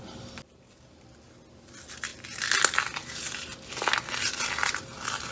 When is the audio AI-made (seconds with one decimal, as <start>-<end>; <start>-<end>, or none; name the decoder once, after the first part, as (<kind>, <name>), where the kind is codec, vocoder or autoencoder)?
none